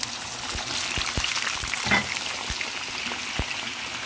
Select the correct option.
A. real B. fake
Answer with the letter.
A